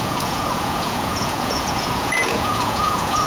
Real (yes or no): no